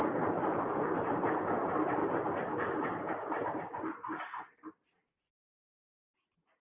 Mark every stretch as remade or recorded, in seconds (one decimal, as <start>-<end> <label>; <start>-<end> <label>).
0.0-6.6 remade